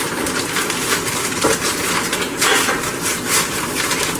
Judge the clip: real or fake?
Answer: fake